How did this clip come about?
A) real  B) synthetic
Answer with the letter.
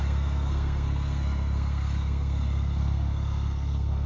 B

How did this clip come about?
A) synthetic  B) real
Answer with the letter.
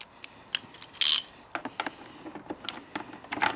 B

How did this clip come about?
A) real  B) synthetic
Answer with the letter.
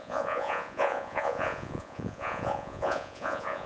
B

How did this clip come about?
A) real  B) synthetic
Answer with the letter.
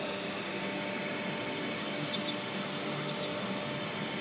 A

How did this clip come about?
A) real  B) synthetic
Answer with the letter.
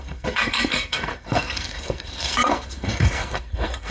B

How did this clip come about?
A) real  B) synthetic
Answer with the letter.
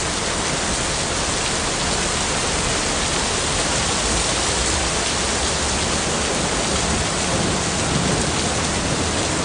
A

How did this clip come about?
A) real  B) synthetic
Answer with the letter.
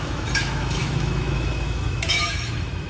B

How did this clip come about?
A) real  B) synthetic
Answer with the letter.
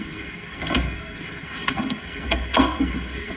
B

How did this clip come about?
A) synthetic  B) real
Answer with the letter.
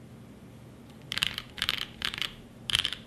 A